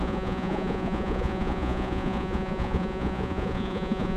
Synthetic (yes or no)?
yes